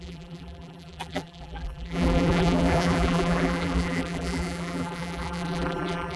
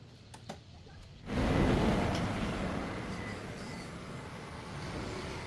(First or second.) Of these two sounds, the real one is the second